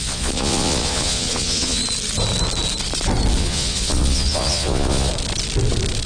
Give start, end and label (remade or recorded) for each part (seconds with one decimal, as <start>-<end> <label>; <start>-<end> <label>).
0.0-1.8 remade; 1.8-3.4 recorded; 3.4-5.1 remade; 5.1-6.1 recorded